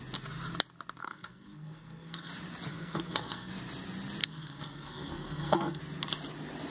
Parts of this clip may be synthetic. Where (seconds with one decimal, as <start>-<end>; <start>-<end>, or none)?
1.0-2.3; 2.7-3.5; 4.2-5.8